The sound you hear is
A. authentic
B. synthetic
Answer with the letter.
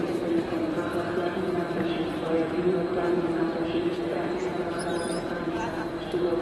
B